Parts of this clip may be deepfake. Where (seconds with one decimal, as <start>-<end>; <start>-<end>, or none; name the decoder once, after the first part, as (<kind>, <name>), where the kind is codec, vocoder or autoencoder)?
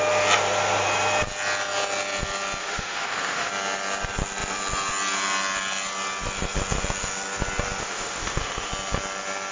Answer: 2.6-3.5 (autoencoder, DAC-VAE); 7.8-8.7